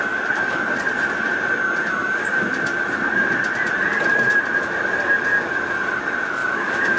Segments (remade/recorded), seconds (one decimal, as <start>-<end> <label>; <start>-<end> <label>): 0.0-6.4 recorded; 6.4-7.0 remade